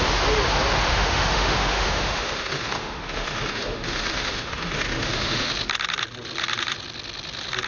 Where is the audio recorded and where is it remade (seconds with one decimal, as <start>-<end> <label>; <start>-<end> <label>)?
0.0-0.9 recorded; 0.9-5.5 remade; 5.5-7.7 recorded